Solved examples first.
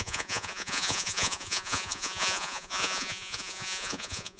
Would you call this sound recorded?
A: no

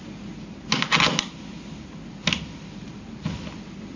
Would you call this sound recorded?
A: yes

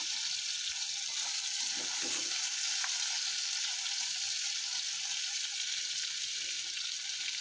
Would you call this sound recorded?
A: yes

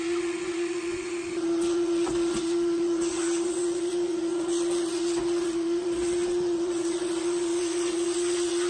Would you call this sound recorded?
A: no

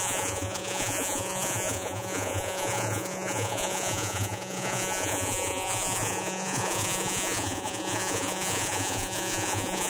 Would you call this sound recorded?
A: no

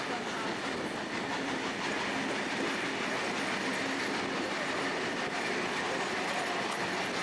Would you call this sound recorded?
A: yes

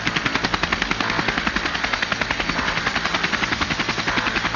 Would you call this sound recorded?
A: yes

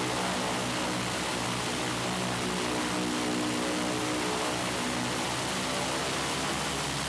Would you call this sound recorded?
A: yes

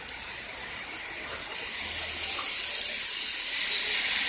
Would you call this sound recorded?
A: yes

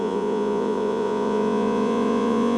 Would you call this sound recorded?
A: no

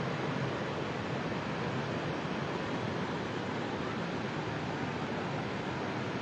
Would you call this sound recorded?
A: yes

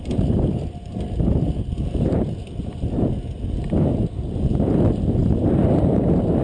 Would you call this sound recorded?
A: yes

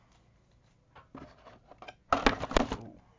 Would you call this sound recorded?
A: yes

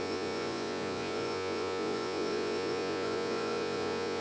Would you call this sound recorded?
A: no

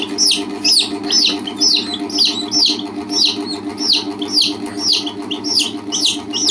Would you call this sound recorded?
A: yes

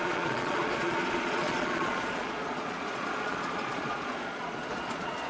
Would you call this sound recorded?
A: no